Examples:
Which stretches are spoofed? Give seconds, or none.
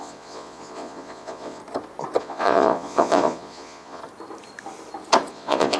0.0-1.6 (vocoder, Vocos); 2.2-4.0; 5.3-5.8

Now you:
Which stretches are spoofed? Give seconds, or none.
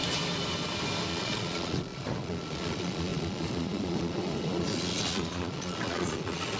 1.1-6.6 (vocoder, Vocos)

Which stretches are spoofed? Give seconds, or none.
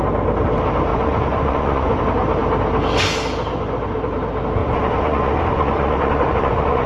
0.9-2.0 (vocoder, Vocos); 4.6-6.9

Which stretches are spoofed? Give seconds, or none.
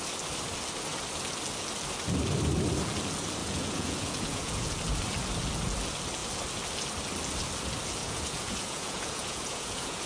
3.4-4.8 (vocoder, Vocos); 8.0-10.1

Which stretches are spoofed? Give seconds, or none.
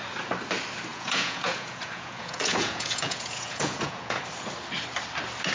0.9-4.2 (vocoder, Vocos)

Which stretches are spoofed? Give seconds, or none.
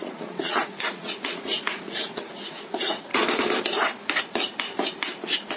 0.0-3.1 (vocoder, Vocos)